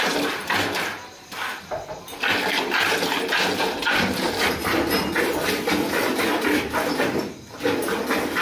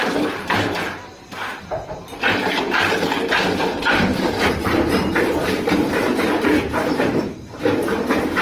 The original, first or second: first